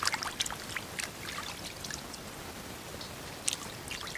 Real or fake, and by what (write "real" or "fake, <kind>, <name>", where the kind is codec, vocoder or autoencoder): real